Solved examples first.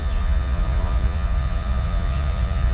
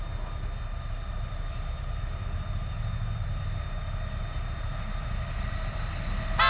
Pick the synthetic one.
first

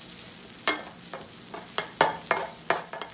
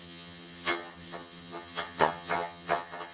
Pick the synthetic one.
second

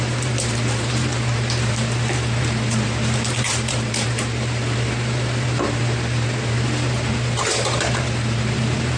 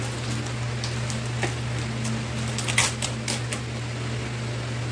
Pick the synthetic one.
first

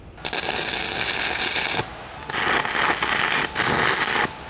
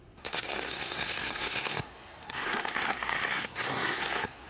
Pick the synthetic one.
second